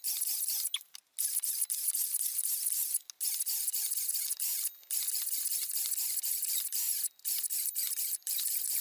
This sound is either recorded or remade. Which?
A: recorded